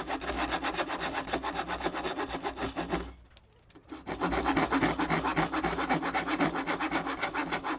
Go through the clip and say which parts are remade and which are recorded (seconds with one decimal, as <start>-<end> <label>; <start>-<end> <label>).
0.0-7.8 recorded